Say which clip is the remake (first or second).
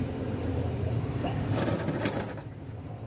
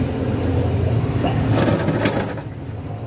first